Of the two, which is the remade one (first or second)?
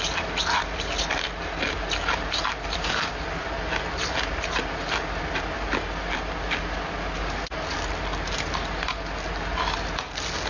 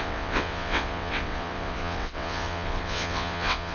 second